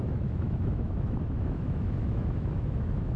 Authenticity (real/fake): fake